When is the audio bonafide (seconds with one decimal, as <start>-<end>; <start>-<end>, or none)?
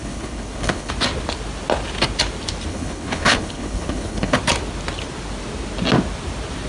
0.9-2.7; 4.4-6.7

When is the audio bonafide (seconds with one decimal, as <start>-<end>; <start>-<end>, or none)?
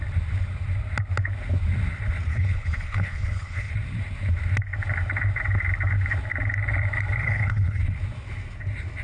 0.0-2.3; 3.7-7.2; 7.8-9.0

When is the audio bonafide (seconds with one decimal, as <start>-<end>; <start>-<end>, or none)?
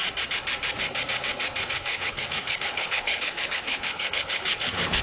0.0-1.9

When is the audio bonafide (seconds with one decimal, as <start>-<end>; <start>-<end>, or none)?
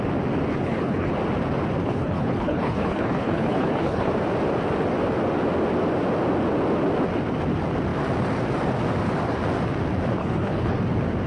0.0-0.5; 1.1-1.8; 4.1-10.2; 10.8-11.3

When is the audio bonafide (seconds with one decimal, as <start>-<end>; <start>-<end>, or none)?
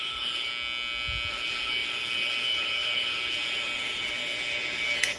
0.5-1.3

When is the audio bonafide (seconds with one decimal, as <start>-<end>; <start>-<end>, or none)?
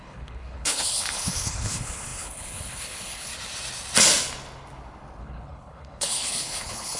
3.3-5.2